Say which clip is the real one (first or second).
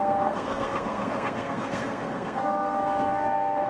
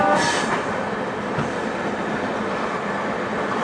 second